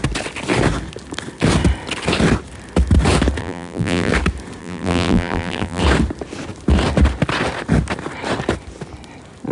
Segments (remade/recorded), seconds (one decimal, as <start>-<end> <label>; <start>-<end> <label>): 0.0-3.4 recorded; 3.4-4.1 remade; 4.1-4.6 recorded; 4.6-5.8 remade; 5.8-9.5 recorded